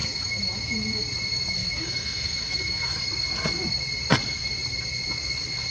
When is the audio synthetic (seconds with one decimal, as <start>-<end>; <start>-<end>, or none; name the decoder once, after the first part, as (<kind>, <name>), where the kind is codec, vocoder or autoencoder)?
0.0-1.0 (autoencoder, DAC-VAE); 1.6-3.0